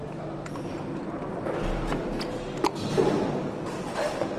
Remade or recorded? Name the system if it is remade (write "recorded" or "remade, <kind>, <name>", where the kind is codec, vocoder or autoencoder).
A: recorded